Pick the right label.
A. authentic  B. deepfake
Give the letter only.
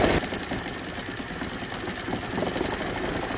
A